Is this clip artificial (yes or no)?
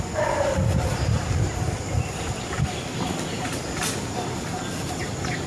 no